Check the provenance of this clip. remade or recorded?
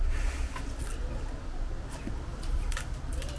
recorded